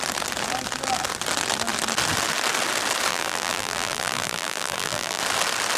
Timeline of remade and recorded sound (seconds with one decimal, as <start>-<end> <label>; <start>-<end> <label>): 0.0-3.1 recorded; 3.1-5.2 remade; 5.2-5.8 recorded